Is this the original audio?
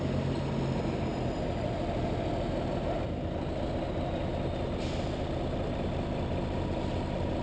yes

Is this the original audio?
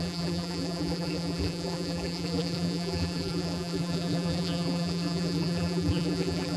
no